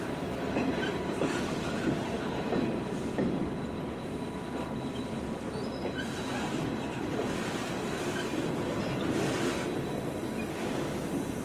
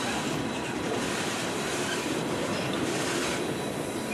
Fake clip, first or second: second